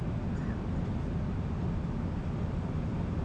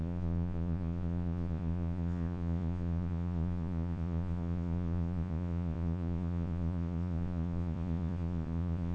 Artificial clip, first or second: second